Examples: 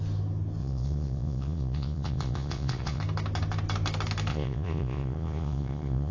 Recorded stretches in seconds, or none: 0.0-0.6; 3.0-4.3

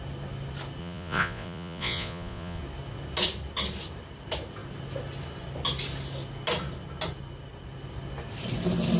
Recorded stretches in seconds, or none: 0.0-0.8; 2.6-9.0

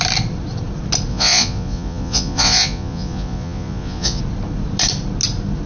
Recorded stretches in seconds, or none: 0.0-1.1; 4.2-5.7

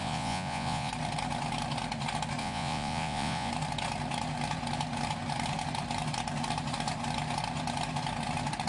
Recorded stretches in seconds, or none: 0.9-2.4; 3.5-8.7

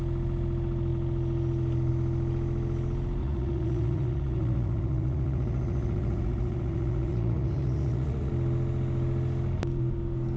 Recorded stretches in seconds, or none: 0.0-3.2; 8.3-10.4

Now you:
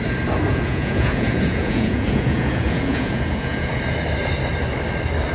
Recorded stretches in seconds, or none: 0.0-0.5; 3.7-5.3